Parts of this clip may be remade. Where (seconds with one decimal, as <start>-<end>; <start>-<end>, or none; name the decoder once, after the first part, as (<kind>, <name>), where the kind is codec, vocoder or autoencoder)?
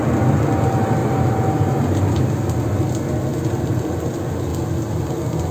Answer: 1.0-2.3 (vocoder, BigVGAN v2)